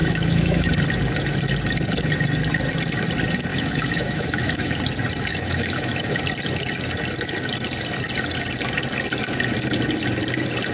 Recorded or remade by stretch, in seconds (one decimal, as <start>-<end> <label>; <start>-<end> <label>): 0.0-0.7 remade; 0.7-3.5 recorded; 3.5-4.8 remade; 4.8-5.3 recorded; 5.3-6.2 remade; 6.2-10.7 recorded